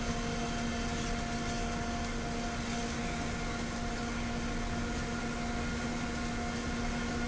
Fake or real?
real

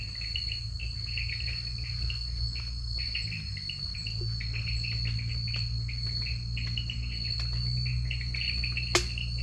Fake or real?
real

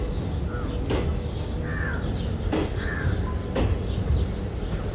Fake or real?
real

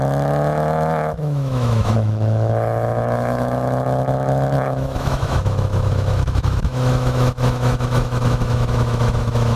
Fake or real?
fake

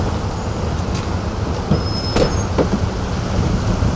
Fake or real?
real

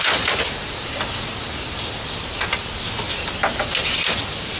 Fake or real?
real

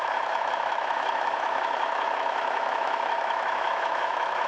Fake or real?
fake